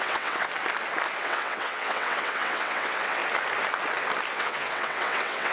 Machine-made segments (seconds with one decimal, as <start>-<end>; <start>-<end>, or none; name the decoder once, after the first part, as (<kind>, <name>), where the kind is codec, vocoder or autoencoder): 0.0-0.5 (vocoder, WaveNeXt); 1.2-3.2; 4.3-5.5